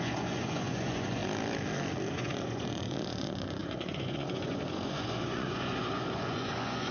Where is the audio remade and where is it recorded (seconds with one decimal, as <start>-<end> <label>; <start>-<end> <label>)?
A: 0.0-1.2 remade; 1.2-2.1 recorded; 2.1-6.9 remade